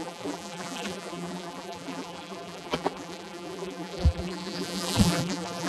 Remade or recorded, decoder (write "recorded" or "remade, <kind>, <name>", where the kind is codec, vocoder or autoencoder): remade, vocoder, BigVGAN v2